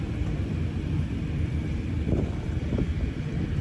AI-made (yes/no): yes